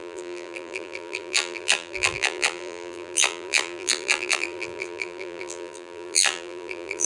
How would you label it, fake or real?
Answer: fake